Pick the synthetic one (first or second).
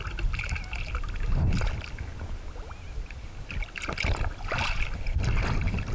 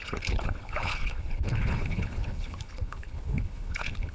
second